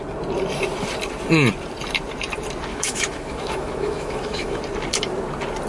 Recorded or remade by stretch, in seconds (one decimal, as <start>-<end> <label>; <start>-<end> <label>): 0.0-2.7 recorded; 2.7-4.6 remade; 4.6-5.7 recorded